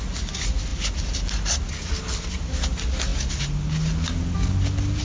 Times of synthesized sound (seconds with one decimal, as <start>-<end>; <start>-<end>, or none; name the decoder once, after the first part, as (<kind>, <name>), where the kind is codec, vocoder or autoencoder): none